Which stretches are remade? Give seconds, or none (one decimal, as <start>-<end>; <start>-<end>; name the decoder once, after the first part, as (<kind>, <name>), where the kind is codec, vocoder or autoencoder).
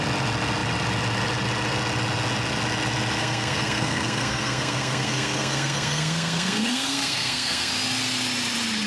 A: 3.2-7.7 (codec, SNAC)